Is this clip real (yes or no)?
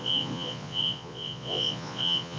no